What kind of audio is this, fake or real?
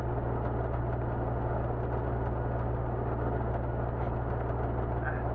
real